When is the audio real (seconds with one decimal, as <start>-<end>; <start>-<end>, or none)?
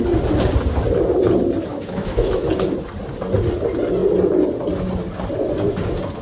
0.0-1.7; 2.5-6.2